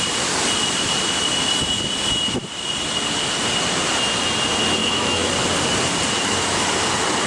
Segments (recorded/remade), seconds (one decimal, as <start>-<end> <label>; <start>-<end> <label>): 0.0-4.8 recorded; 4.8-5.3 remade; 5.3-7.3 recorded